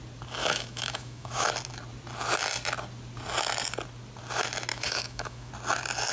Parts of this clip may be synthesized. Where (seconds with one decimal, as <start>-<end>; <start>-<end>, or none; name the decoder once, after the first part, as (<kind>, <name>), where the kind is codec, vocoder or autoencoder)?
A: 0.4-1.5 (autoencoder, DAC-VAE); 4.7-5.5